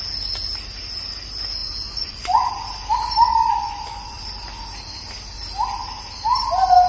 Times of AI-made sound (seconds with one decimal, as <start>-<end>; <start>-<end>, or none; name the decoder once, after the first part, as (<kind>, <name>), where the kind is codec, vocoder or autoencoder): 1.6-2.5 (vocoder, Vocos); 3.3-4.2